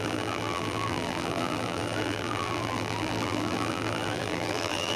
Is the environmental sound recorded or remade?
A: remade